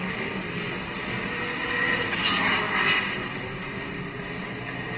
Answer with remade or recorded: recorded